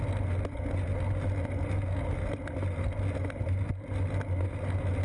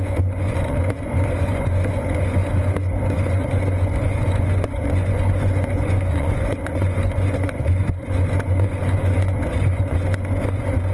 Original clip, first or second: first